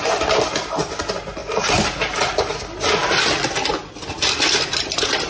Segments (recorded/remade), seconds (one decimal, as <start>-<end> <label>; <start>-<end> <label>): 0.0-1.4 recorded; 1.4-2.6 remade; 2.6-3.0 recorded; 3.0-3.7 remade; 3.7-5.3 recorded